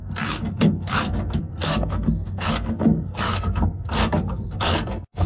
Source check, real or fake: fake